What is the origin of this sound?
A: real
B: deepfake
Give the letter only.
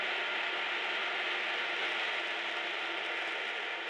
A